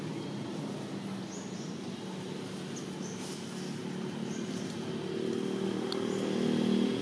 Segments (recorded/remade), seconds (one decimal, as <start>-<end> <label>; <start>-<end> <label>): 0.0-7.0 recorded